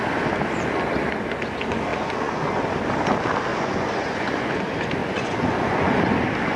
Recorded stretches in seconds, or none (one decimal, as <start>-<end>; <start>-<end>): 0.0-1.9; 2.6-3.5; 4.6-5.0; 6.0-6.6